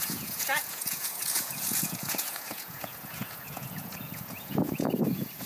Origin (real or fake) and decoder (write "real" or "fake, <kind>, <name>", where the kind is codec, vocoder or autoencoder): fake, vocoder, Vocos